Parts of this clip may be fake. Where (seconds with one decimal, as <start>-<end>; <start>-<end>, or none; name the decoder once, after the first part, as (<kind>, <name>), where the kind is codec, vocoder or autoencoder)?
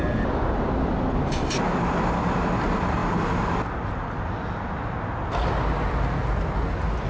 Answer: none